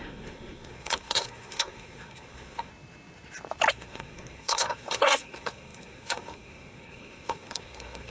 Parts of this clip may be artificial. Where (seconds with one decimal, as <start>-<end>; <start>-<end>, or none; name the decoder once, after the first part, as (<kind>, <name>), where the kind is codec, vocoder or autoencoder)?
0.0-2.7 (codec, SNAC); 3.7-8.1